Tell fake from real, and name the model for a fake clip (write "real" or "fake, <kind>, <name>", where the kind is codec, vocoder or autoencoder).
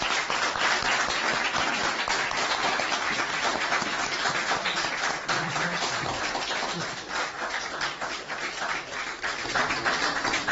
fake, vocoder, BigVGAN v2